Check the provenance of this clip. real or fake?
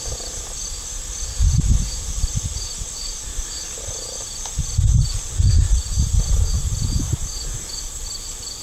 real